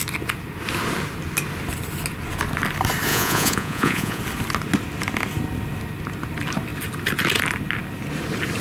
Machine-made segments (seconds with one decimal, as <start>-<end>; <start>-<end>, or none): 3.1-4.2